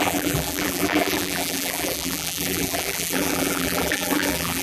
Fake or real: fake